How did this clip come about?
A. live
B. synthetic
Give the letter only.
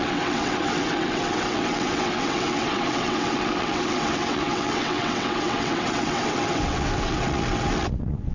B